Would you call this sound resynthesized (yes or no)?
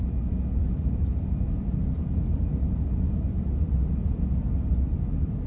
no